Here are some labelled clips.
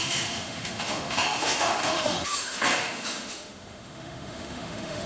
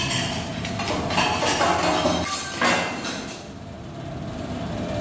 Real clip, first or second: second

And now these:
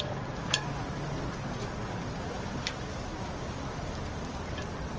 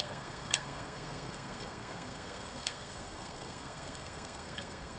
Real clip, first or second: first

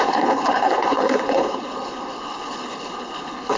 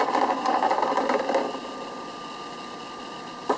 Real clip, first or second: second